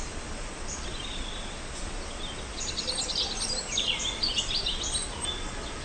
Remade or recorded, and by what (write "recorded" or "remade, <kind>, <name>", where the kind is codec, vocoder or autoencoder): recorded